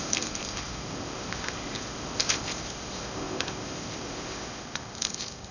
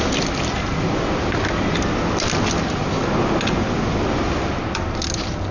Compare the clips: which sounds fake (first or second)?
first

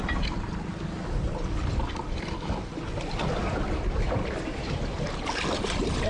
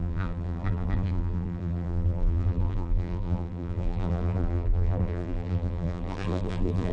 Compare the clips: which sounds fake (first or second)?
second